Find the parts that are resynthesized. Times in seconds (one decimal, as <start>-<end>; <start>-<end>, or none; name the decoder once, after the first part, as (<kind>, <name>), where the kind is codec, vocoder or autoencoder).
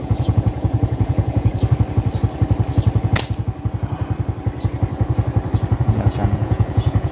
0.0-1.5 (vocoder, Vocos); 5.8-7.1